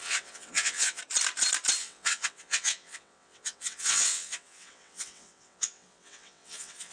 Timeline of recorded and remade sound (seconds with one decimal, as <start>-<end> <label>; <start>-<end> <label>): 0.0-1.0 remade; 1.0-1.8 recorded; 1.8-6.9 remade